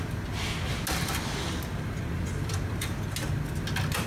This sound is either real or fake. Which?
real